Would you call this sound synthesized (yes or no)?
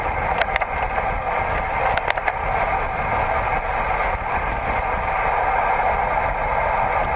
no